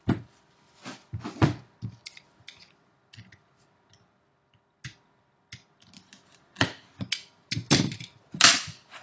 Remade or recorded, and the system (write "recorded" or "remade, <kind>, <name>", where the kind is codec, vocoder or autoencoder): recorded